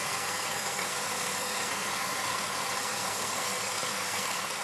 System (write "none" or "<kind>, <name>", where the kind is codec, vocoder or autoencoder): codec, SNAC